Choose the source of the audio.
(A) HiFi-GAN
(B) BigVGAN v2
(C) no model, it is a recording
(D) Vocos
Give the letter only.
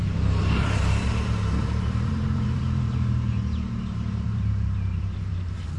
B